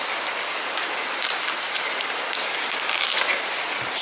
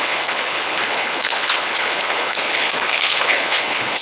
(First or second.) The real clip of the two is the first